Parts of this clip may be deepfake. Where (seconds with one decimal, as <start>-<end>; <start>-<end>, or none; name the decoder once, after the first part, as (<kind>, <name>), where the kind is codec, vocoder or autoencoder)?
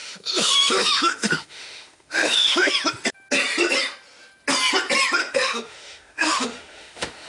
0.0-2.7 (autoencoder, DAC-VAE); 5.2-7.3